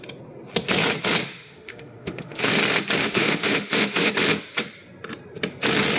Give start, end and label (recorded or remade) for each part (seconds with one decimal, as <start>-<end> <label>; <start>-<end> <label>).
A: 0.0-1.2 recorded; 1.2-2.5 remade; 2.5-3.0 recorded; 3.0-4.1 remade; 4.1-6.0 recorded